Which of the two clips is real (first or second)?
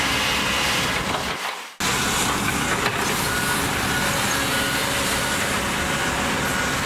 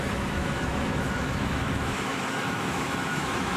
first